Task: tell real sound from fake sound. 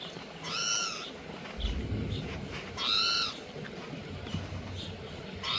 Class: real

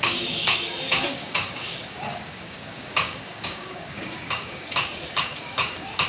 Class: fake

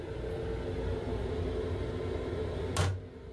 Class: real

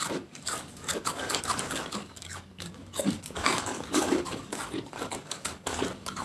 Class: fake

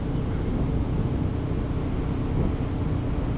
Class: real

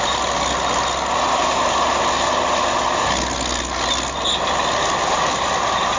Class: real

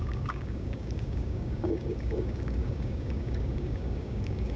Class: fake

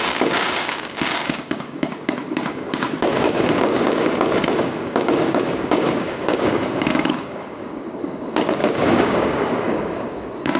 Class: fake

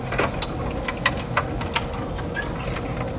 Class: real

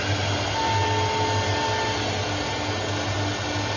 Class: real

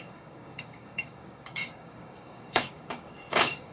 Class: fake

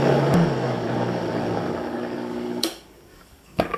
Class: fake